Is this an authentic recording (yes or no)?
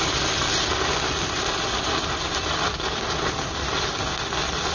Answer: yes